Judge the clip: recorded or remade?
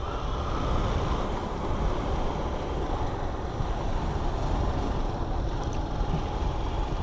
recorded